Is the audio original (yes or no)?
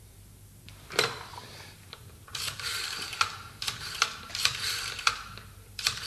no